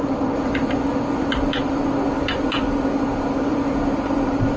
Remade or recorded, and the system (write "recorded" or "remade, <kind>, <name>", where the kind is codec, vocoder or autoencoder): recorded